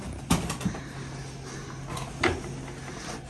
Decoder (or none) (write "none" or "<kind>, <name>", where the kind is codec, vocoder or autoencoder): none